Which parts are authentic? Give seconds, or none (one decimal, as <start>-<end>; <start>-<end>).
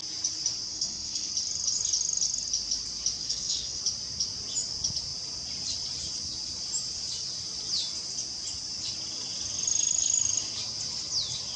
0.0-0.7; 1.3-3.2; 3.8-11.6